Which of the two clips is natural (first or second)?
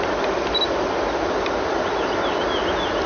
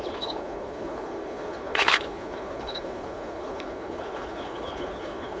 first